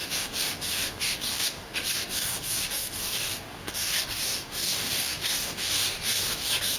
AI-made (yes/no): yes